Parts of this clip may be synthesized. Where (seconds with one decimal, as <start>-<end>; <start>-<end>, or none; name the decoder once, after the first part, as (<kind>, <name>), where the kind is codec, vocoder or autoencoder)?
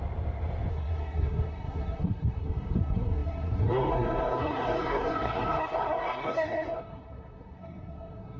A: 0.7-8.4 (codec, SNAC)